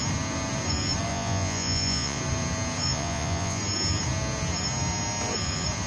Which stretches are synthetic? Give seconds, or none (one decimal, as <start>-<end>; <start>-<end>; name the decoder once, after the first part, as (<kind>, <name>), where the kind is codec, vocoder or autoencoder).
1.1-2.2 (vocoder, Vocos); 2.9-3.6